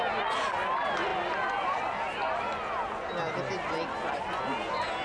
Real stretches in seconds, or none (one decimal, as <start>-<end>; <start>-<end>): 0.0-5.0

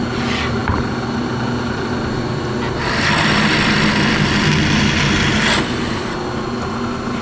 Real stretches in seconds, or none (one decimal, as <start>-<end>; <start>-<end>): 0.0-7.2

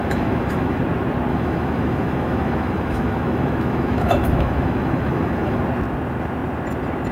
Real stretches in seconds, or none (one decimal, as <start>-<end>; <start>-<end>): 0.8-1.3; 5.6-7.1

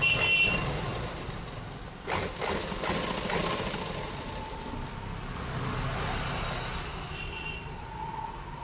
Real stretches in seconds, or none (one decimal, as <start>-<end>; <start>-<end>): 0.0-8.6